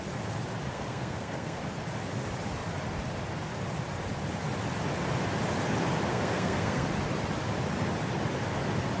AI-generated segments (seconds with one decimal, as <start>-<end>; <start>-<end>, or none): 0.7-1.6; 6.1-6.9